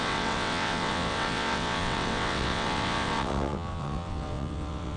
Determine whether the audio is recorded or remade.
remade